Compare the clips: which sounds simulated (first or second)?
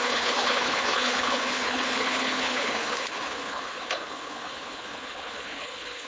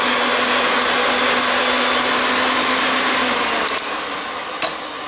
first